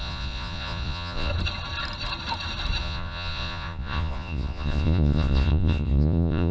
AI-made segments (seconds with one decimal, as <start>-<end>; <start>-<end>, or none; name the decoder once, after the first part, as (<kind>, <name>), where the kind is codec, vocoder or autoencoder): 0.0-1.3 (vocoder, Vocos); 2.8-6.5